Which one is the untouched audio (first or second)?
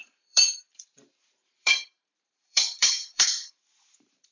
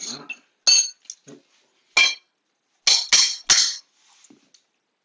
second